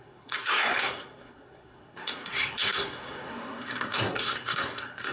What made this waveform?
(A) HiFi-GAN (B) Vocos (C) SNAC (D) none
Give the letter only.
C